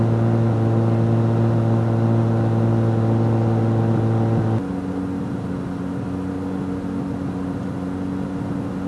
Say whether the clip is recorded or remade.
recorded